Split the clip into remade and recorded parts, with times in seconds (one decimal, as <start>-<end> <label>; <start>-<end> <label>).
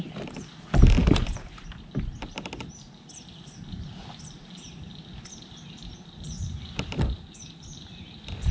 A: 0.0-1.0 recorded; 1.0-1.7 remade; 1.7-8.5 recorded